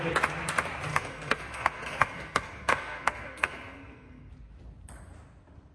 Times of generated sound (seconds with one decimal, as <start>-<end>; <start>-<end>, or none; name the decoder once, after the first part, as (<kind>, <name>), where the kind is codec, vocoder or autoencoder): 0.9-4.3 (codec, SNAC)